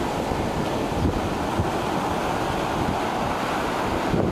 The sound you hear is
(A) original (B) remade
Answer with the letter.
A